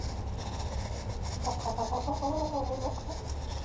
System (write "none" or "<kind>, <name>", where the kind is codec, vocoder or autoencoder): none